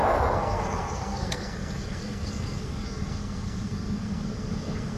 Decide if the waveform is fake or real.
fake